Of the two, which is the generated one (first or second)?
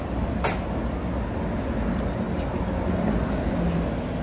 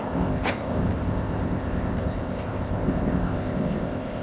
second